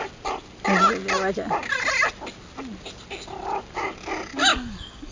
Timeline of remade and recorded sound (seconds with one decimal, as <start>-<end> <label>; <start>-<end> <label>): 0.0-4.5 recorded; 4.5-5.1 remade